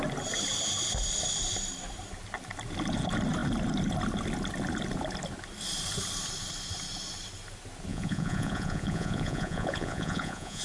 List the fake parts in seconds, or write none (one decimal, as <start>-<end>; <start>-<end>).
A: 7.9-10.6